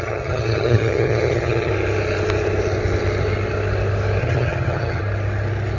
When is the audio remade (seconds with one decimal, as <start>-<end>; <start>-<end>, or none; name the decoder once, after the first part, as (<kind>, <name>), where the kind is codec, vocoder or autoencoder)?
0.0-1.7 (vocoder, HiFi-GAN); 4.2-5.0